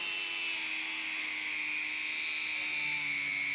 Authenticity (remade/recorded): recorded